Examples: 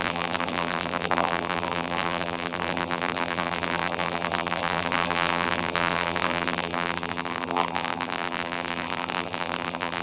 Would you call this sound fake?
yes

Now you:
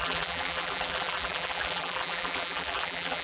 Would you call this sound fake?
yes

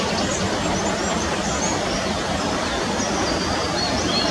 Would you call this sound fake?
no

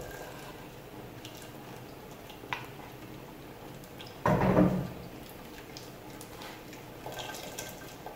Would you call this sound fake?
yes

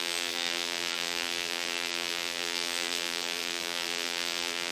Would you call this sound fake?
yes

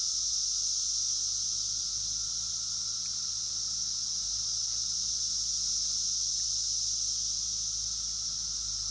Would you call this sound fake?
no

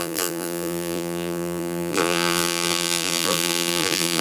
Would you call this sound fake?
yes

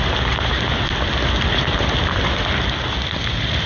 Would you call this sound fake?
no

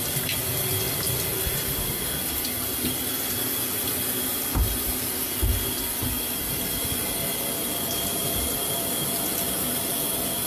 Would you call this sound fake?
no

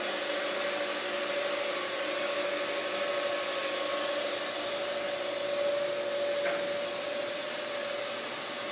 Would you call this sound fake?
no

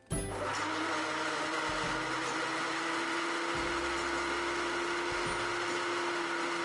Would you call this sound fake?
no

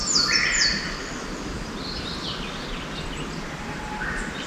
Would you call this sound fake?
no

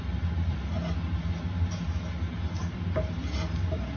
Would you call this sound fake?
no